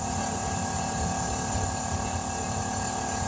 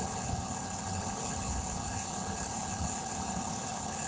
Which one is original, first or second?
first